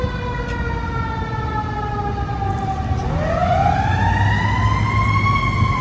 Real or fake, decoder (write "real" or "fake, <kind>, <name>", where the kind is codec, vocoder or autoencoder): real